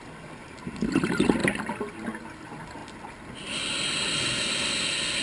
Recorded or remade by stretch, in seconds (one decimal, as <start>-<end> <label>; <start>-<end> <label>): 0.0-5.2 recorded